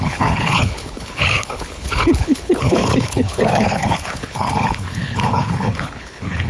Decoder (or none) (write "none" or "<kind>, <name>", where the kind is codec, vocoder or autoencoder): codec, HILCodec